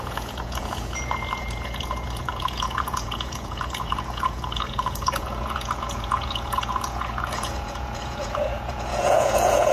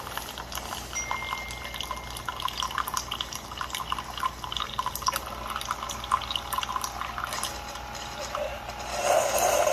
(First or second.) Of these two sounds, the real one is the second